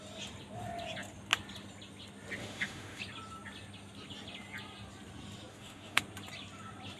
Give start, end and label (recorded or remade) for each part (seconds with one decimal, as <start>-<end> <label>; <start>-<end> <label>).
0.0-2.4 recorded; 2.4-3.0 remade; 3.0-5.5 recorded; 5.5-6.0 remade; 6.0-7.0 recorded